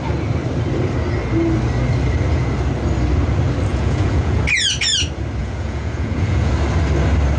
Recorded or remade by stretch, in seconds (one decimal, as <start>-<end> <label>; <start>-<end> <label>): 0.0-3.7 recorded; 3.7-4.4 remade; 4.4-5.4 recorded; 5.4-6.5 remade; 6.5-7.4 recorded